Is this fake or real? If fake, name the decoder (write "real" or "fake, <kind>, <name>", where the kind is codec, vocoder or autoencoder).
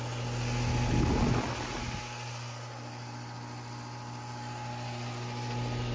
real